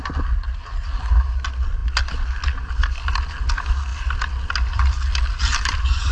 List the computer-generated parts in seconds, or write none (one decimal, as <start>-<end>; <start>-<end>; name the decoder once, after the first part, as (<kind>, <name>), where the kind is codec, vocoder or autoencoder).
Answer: none